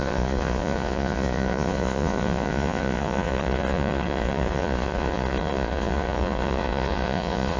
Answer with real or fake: fake